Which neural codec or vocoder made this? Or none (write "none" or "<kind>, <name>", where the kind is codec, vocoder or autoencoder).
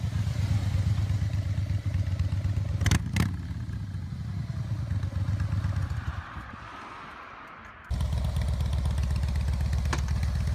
none